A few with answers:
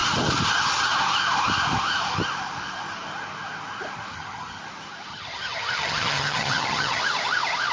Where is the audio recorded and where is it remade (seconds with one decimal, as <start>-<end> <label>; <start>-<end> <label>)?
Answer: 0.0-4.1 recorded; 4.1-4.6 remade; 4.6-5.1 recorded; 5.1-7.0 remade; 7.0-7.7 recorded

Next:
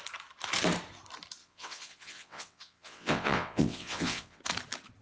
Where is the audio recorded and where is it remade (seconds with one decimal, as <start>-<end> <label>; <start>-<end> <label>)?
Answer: 0.0-1.4 recorded; 1.4-4.4 remade; 4.4-5.0 recorded

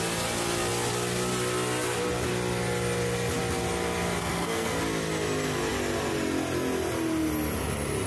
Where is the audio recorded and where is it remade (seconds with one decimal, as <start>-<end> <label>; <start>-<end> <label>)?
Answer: 0.0-4.2 recorded; 4.2-4.8 remade; 4.8-8.1 recorded

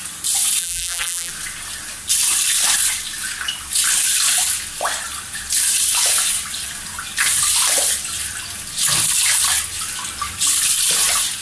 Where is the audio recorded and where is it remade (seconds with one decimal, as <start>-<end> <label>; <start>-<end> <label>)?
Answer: 0.0-0.6 recorded; 0.6-1.3 remade; 1.3-11.4 recorded

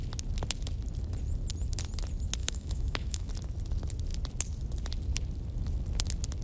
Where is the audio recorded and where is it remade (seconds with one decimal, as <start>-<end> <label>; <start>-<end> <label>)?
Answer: 0.0-2.4 recorded; 2.4-3.3 remade; 3.3-6.4 recorded

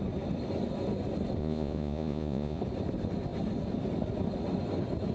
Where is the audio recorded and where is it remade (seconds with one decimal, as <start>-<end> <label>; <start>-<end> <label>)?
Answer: 0.0-1.4 recorded; 1.4-2.6 remade; 2.6-5.1 recorded

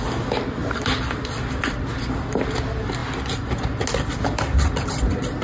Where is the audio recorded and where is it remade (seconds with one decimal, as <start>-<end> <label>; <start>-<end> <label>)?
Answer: 0.0-5.4 recorded